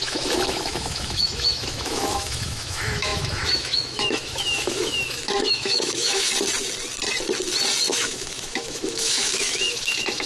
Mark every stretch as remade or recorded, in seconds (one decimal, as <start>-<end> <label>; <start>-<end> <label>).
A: 0.0-6.3 remade; 6.3-7.9 recorded; 7.9-10.3 remade